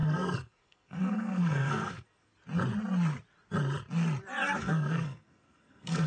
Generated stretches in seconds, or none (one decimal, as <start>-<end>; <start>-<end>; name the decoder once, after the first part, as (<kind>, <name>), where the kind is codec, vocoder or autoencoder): 0.0-2.3 (codec, SNAC); 4.6-6.1